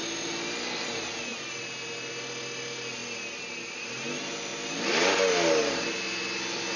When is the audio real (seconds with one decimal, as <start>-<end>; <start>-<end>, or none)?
0.0-6.8